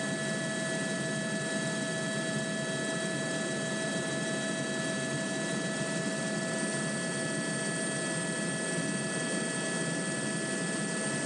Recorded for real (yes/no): yes